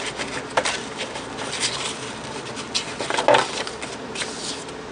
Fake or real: real